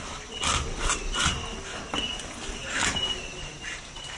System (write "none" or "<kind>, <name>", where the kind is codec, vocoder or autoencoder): none